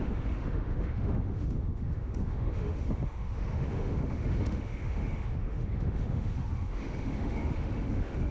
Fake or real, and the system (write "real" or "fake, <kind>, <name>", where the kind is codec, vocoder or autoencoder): fake, autoencoder, DAC-VAE